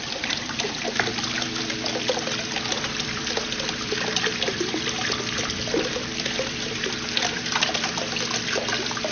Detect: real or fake fake